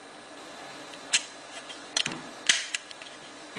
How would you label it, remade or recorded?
remade